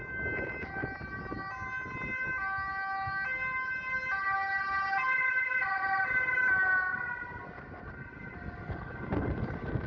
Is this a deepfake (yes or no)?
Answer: no